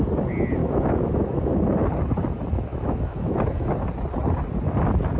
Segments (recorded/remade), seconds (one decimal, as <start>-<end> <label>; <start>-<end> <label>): 0.0-0.6 recorded; 0.6-1.8 remade; 1.8-2.7 recorded; 2.7-3.7 remade; 3.7-5.2 recorded